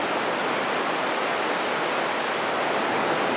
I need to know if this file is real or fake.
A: real